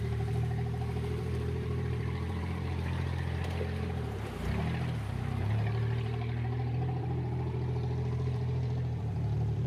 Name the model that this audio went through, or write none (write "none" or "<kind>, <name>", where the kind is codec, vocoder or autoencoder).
vocoder, BigVGAN v2